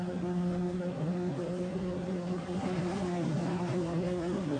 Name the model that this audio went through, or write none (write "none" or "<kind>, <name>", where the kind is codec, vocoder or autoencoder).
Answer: codec, SNAC